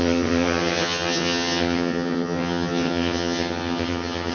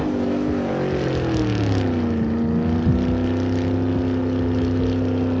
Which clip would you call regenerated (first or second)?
first